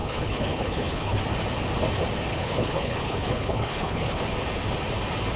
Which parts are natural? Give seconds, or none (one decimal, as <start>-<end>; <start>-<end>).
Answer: 1.2-2.3; 4.2-5.4